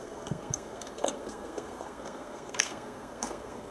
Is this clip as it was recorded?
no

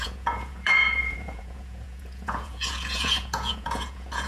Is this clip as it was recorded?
no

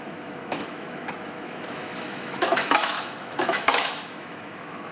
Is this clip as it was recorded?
no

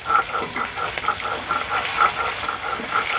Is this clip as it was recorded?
yes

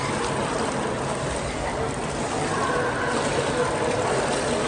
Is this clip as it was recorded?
yes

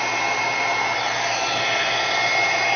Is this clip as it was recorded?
yes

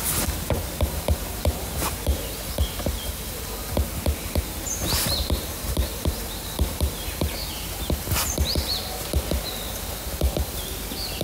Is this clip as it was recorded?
no